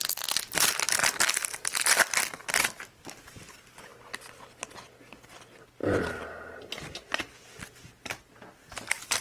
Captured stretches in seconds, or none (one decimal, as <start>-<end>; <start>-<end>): 0.0-5.8; 6.8-9.2

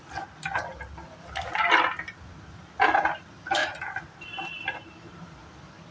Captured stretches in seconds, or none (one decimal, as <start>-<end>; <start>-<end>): 0.0-3.6; 5.4-5.9

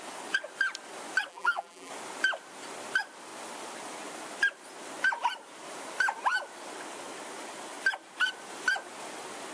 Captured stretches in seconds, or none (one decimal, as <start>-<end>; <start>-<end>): 0.0-1.3; 1.9-9.5

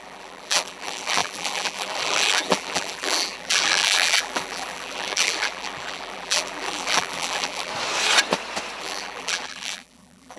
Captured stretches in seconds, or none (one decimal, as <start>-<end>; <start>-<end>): 7.7-8.8

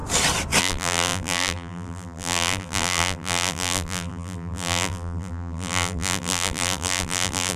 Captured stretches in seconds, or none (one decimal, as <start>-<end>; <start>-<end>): 0.0-0.6

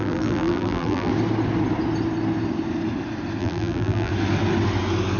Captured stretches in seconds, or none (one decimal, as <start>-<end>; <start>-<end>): 1.1-3.4; 4.1-5.2

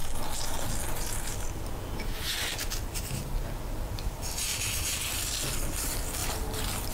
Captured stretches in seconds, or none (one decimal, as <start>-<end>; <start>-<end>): 0.0-4.1; 4.5-5.8; 6.2-6.9